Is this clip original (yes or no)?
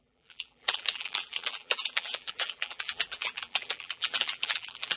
no